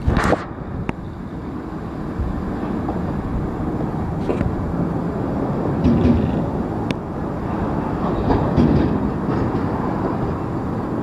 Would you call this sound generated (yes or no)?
no